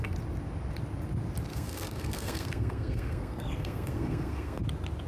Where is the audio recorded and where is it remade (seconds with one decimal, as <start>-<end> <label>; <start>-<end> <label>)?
0.0-1.5 recorded; 1.5-4.6 remade; 4.6-5.1 recorded